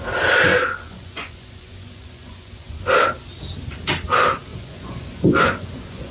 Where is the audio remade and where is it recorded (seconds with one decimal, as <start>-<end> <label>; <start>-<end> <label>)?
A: 0.0-0.5 recorded; 0.5-2.8 remade; 2.8-4.5 recorded; 4.5-6.1 remade